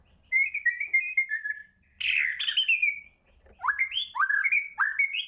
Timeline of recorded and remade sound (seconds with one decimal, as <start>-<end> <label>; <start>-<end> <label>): 0.0-5.3 recorded